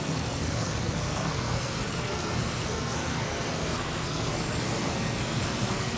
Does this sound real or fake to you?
fake